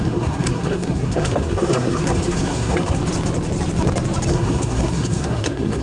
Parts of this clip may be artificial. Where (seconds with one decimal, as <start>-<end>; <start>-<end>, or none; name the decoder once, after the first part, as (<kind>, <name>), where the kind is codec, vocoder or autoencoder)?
0.0-3.0 (codec, SNAC); 4.3-5.8